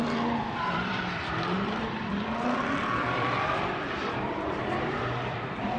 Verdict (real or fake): fake